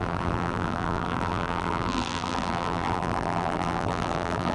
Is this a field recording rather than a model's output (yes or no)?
no